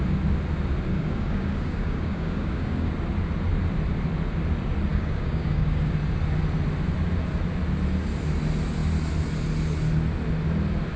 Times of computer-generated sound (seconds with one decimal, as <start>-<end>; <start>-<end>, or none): 0.9-2.9; 4.9-5.9